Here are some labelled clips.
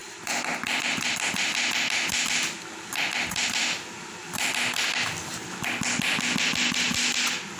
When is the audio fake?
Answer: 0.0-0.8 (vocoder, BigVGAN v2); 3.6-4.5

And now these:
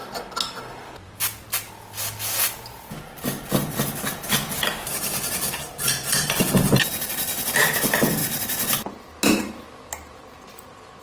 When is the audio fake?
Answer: none

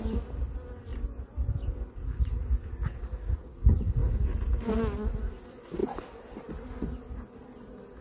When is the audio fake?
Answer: 0.9-2.3 (vocoder, BigVGAN v2); 4.0-4.7; 5.8-6.5

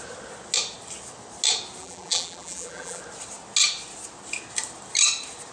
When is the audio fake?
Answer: 1.8-3.0 (vocoder, BigVGAN v2)

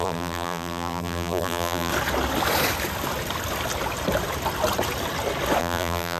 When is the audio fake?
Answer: 0.0-1.9 (vocoder, BigVGAN v2); 5.6-6.2

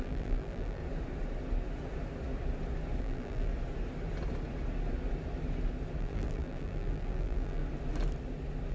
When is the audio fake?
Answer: 0.0-0.8 (vocoder, BigVGAN v2); 3.0-3.5; 6.0-7.6

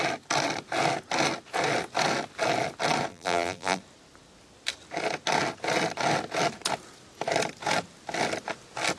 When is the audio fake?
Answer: 3.1-3.8 (vocoder, BigVGAN v2)